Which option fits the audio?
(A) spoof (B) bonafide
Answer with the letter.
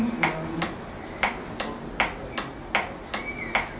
B